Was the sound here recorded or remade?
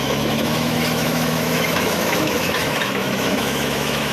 remade